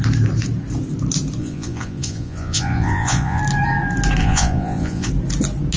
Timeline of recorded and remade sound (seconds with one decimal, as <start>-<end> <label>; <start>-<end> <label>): 0.0-1.4 recorded; 1.4-3.4 remade; 3.4-4.2 recorded; 4.2-5.1 remade; 5.1-5.8 recorded